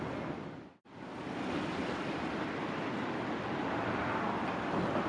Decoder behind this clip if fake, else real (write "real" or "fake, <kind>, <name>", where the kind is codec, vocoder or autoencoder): real